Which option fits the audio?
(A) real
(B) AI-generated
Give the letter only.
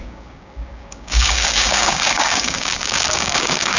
B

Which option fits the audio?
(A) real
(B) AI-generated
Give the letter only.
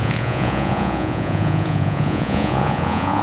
B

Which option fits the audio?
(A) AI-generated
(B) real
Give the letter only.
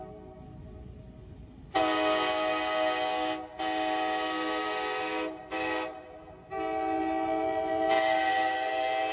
B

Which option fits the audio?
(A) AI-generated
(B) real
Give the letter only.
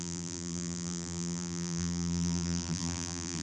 A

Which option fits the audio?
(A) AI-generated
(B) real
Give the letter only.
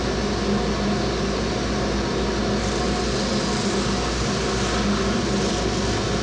B